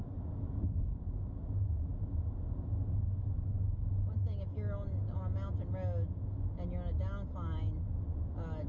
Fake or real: real